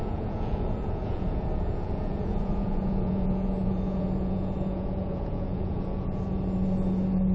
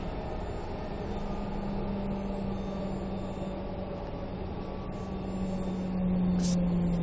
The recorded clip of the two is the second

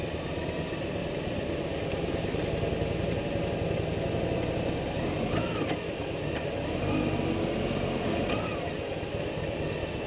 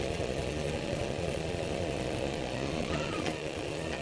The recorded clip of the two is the first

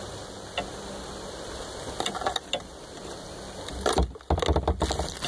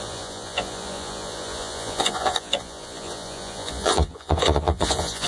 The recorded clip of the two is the first